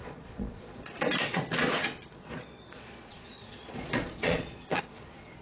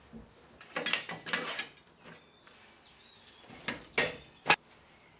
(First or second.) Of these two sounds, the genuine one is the second